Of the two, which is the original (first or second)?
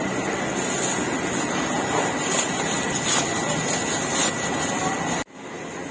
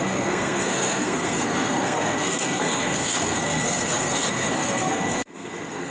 first